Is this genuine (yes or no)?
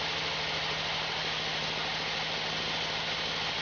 yes